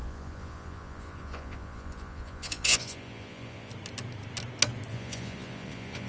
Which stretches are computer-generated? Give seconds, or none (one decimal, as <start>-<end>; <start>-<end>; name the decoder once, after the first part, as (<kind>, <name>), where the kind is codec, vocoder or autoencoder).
0.0-3.7 (vocoder, Vocos); 4.9-6.1